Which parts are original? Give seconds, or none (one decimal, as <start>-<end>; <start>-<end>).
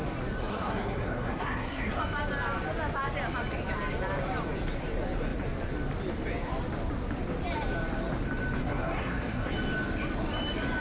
0.0-0.5; 2.0-8.6; 9.5-10.8